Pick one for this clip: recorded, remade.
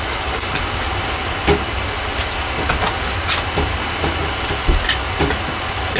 recorded